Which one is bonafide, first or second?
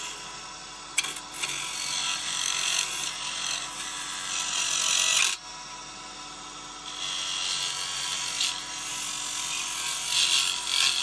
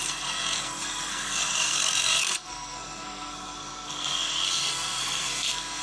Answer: first